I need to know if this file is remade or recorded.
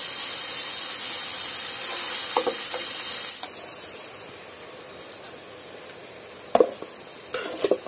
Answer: recorded